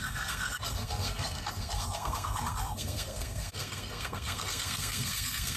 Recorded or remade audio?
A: remade